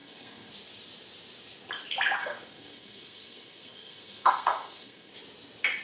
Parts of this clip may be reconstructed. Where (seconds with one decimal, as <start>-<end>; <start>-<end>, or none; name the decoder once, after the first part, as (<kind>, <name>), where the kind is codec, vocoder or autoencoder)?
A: 0.0-0.5 (codec, SNAC); 2.2-5.1